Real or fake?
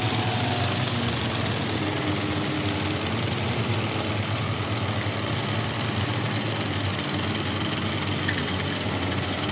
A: real